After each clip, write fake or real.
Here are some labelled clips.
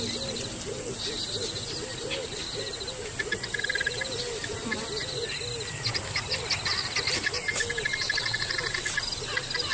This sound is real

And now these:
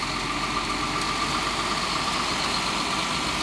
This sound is real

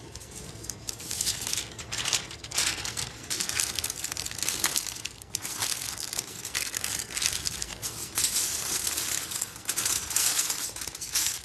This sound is fake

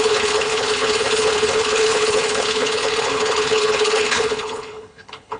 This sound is fake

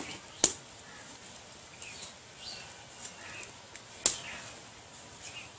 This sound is real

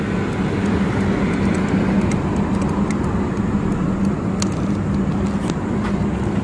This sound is real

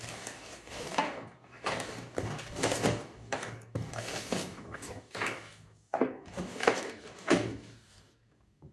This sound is fake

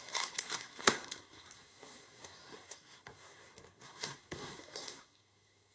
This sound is fake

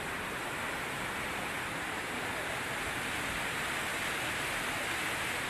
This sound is real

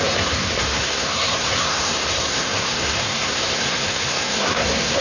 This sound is fake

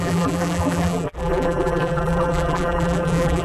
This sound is fake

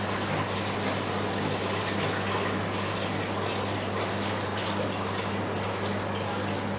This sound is real